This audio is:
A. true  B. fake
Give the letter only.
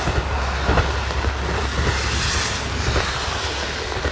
A